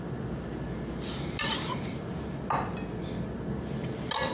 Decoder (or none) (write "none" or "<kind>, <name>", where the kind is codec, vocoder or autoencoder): none